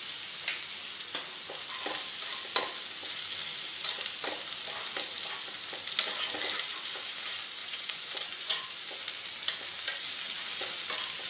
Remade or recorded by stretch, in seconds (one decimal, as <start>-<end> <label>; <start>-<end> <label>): 0.0-7.6 recorded; 7.6-8.7 remade; 8.7-11.3 recorded